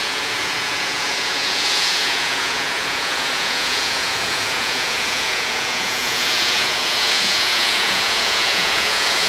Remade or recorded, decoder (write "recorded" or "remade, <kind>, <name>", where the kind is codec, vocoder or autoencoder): remade, vocoder, Vocos